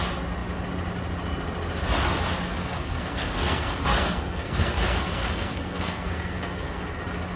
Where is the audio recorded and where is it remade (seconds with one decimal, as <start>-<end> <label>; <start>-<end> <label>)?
0.0-2.6 recorded; 2.6-7.0 remade; 7.0-7.4 recorded